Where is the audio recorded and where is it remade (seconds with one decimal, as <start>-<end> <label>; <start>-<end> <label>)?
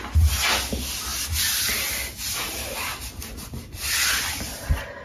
0.0-5.0 recorded